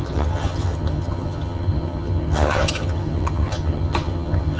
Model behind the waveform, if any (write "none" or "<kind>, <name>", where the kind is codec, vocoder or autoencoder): vocoder, HiFi-GAN